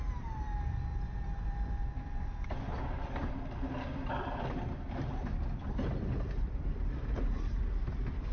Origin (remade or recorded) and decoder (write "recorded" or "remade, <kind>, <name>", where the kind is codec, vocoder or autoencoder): remade, vocoder, BigVGAN v2